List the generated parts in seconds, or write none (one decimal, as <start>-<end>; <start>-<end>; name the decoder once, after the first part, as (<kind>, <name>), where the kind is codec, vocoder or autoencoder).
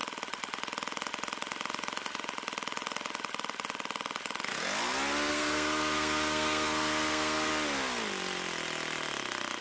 5.3-7.5 (codec, SNAC)